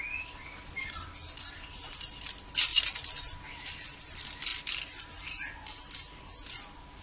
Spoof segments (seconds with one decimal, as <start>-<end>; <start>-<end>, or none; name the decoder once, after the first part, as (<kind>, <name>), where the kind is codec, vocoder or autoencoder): 2.7-3.2 (vocoder, BigVGAN v2)